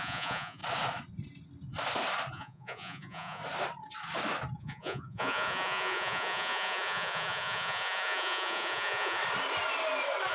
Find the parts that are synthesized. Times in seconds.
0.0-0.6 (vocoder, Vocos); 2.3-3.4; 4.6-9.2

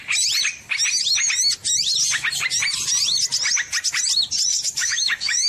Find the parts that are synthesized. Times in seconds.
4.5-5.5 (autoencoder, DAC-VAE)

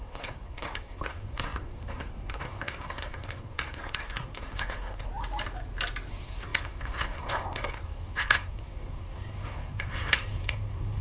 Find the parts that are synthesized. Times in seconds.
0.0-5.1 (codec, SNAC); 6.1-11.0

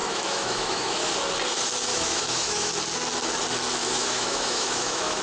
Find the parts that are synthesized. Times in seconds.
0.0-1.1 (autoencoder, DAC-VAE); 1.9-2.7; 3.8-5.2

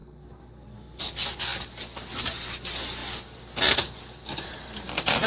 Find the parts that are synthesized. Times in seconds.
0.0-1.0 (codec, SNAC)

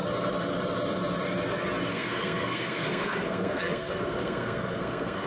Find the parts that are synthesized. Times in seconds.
1.9-5.3 (codec, SNAC)

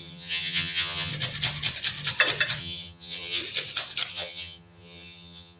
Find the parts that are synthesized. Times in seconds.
0.0-1.1 (vocoder, HiFi-GAN); 2.6-3.4; 4.1-5.6

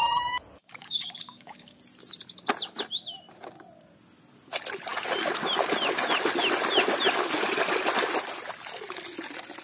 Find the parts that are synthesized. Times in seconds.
0.6-1.8 (codec, DAC)